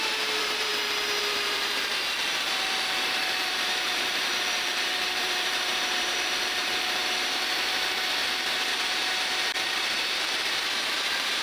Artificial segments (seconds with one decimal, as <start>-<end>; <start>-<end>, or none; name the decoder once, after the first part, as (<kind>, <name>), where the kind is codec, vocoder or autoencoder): 0.0-0.7 (vocoder, BigVGAN v2); 1.2-7.0; 9.6-11.4